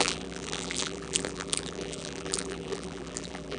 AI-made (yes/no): yes